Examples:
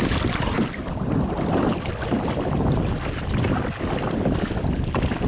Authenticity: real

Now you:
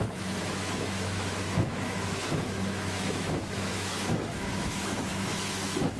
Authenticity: fake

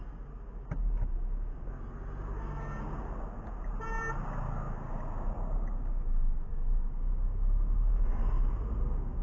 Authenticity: real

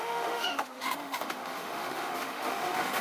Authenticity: fake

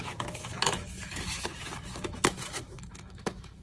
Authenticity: fake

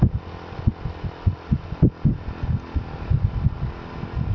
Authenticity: real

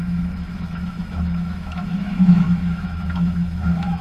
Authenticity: fake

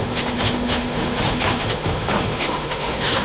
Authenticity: fake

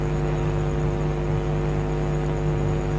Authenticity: real